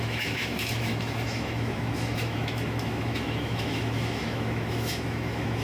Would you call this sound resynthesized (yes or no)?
yes